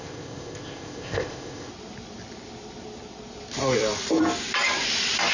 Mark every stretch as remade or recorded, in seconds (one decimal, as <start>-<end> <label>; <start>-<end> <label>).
0.0-1.7 remade; 1.7-5.3 recorded